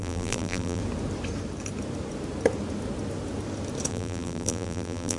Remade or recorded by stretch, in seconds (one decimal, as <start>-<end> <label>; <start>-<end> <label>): 0.0-0.8 remade; 0.8-3.9 recorded; 3.9-5.2 remade